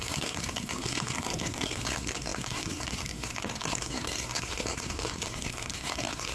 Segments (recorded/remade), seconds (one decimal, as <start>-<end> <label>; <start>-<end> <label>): 0.0-6.3 remade